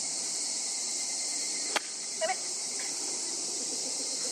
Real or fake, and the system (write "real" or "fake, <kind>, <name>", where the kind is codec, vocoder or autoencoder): fake, vocoder, BigVGAN v2